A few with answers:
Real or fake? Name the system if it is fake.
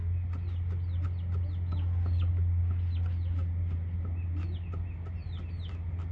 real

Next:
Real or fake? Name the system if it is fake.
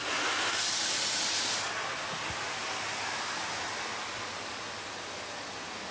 real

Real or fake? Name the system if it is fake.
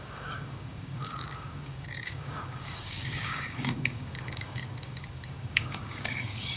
fake, codec, DAC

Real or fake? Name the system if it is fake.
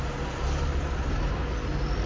real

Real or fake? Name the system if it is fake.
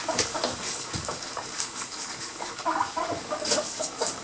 fake, codec, DAC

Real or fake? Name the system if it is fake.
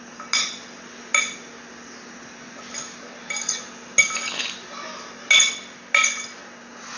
real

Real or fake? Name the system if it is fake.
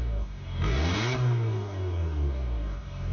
fake, codec, DAC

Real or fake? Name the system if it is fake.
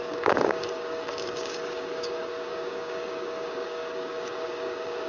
fake, codec, DAC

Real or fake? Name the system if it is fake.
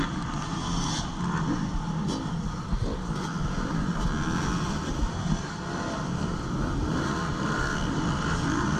real